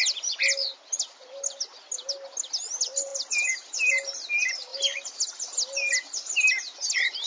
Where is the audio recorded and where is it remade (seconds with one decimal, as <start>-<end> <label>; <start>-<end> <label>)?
0.0-7.3 recorded

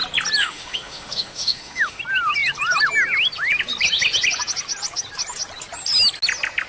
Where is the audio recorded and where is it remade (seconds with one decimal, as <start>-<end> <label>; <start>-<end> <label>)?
0.0-0.4 recorded; 0.4-2.0 remade; 2.0-6.7 recorded

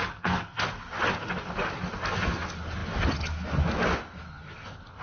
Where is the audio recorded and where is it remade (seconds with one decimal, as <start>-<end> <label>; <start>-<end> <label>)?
0.0-0.6 remade; 0.6-5.0 recorded